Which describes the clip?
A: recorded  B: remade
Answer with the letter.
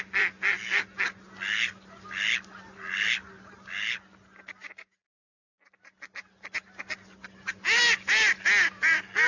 A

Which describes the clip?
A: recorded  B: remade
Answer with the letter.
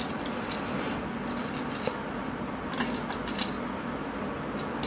A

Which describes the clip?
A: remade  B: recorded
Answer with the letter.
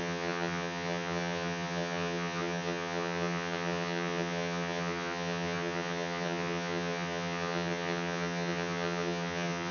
A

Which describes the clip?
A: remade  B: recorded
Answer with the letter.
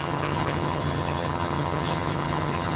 A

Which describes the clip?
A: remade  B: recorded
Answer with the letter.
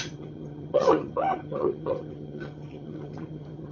A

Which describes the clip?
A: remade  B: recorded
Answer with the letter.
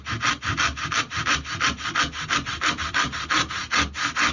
B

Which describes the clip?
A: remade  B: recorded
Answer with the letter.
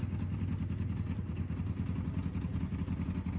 B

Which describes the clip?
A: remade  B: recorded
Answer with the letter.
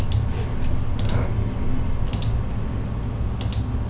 B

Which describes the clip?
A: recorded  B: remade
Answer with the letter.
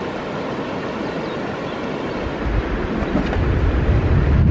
A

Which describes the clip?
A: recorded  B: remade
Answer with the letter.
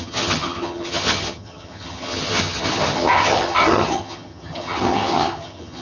B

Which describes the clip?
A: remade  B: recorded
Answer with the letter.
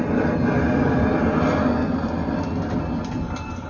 B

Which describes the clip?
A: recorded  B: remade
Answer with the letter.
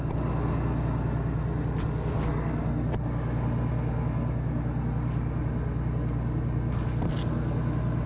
A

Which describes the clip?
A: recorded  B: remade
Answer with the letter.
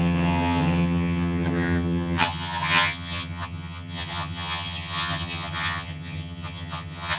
B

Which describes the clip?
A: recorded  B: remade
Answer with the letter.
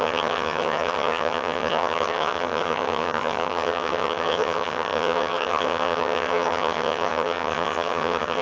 B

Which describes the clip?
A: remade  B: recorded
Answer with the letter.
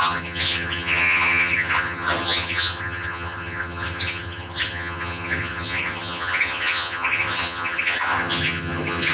A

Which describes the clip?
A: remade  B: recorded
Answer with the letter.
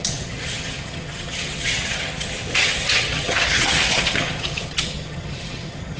A